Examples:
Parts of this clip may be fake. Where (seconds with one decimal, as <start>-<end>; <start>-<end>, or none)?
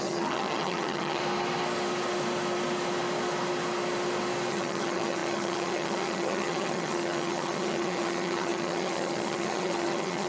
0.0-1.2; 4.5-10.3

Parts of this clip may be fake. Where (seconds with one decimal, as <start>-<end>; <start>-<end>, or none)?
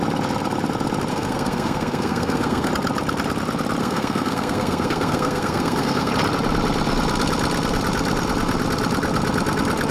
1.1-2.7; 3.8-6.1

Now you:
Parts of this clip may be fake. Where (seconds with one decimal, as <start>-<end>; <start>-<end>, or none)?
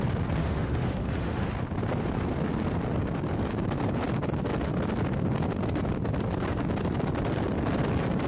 0.4-1.5